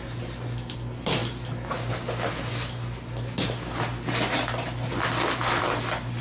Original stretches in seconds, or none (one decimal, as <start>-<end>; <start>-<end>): 0.0-6.2